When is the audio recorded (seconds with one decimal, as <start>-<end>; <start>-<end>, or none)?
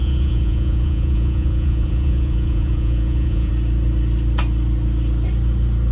3.5-5.9